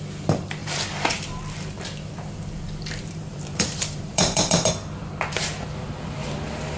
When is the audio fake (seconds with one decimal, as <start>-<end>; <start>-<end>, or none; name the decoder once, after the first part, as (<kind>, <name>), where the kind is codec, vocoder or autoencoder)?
0.6-4.7 (vocoder, BigVGAN v2)